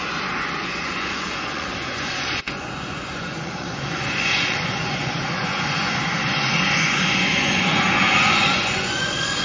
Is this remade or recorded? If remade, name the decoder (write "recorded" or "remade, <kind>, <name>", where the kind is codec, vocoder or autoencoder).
remade, vocoder, Vocos